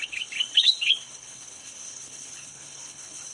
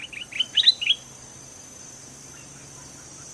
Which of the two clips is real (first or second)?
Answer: second